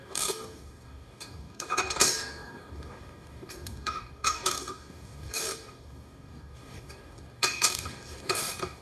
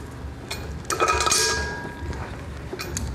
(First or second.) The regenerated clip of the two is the first